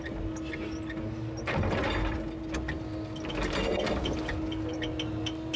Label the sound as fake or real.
real